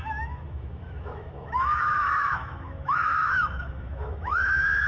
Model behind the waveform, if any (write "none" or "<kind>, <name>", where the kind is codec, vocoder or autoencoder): autoencoder, DAC-VAE